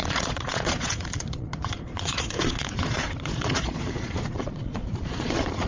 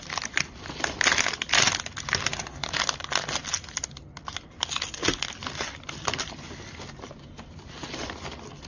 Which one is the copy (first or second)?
first